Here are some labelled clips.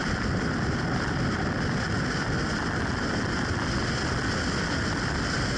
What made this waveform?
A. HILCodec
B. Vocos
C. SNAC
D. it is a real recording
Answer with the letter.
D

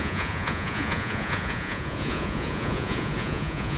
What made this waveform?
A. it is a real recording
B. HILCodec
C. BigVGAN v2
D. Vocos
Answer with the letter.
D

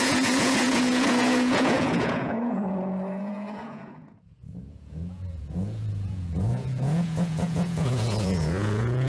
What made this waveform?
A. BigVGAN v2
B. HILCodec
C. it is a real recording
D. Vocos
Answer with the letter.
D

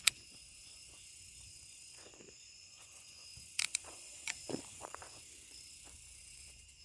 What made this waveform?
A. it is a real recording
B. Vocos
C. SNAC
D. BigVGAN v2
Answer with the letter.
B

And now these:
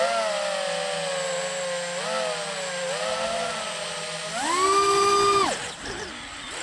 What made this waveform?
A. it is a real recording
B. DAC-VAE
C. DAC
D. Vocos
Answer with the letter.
A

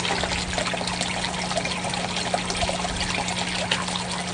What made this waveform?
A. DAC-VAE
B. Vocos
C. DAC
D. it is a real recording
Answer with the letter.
D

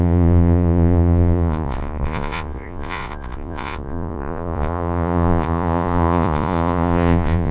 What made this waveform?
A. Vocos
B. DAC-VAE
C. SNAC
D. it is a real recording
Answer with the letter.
A